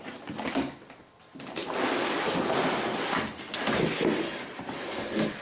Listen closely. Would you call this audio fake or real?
real